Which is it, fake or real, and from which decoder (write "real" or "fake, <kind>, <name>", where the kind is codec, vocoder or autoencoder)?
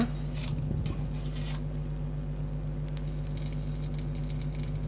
real